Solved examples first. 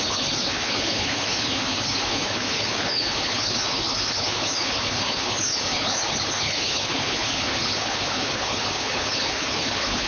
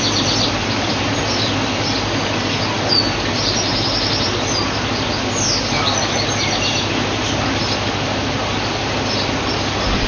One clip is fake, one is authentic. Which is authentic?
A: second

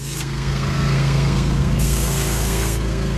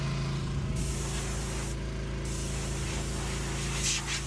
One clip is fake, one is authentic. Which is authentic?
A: second